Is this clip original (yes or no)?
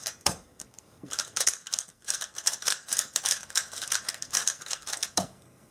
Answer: no